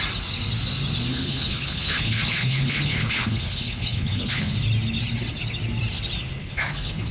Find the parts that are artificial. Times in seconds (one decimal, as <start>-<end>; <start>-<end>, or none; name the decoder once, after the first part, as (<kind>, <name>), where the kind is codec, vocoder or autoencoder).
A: 1.1-4.5 (codec, HILCodec); 6.4-7.1